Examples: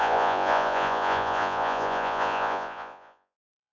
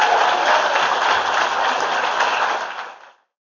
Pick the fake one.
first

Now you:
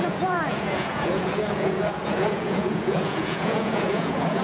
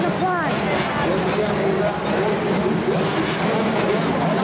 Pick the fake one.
first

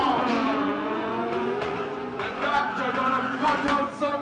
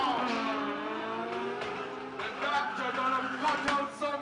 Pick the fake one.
first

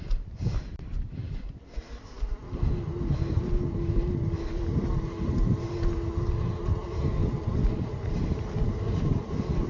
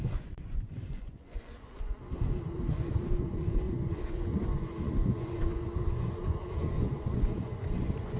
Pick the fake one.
second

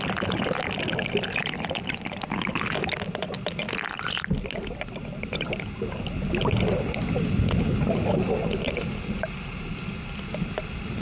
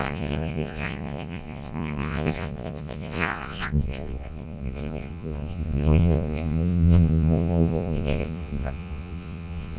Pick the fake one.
second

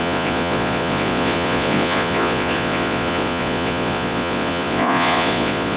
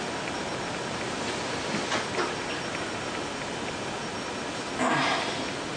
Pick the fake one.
first